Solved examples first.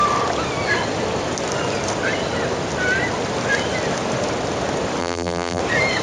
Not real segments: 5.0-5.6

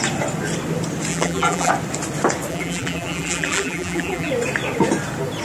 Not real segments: 1.1-1.7; 2.5-4.3

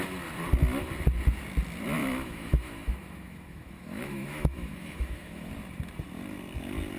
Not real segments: 2.0-5.5

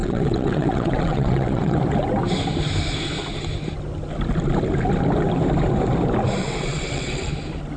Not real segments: 0.0-1.8; 6.4-7.3

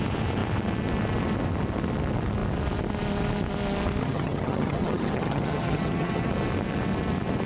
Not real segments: 4.0-6.3